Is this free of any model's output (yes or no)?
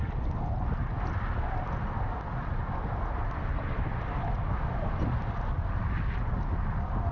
yes